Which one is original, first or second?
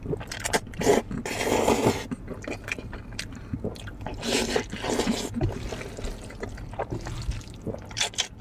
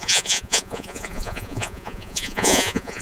first